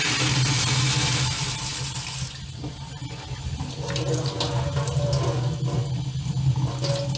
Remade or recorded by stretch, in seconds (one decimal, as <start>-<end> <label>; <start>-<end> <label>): 0.0-7.2 recorded